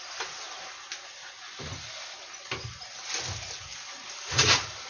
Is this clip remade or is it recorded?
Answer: recorded